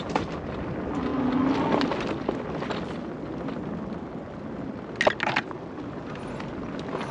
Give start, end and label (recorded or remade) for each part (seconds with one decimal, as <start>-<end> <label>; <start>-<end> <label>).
0.0-7.1 recorded